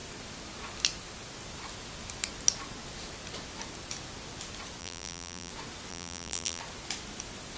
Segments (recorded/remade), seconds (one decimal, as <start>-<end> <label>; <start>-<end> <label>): 0.0-4.8 recorded; 4.8-5.5 remade; 5.5-5.9 recorded; 5.9-6.6 remade; 6.6-7.6 recorded